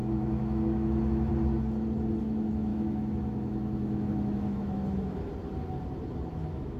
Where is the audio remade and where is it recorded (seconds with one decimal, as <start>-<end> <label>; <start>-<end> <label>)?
0.0-1.3 remade; 1.3-2.2 recorded; 2.2-5.3 remade; 5.3-6.3 recorded; 6.3-6.8 remade